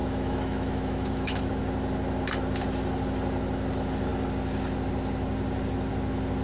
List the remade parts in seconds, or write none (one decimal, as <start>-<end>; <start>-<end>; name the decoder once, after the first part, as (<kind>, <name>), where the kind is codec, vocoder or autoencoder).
0.0-1.5 (autoencoder, DAC-VAE)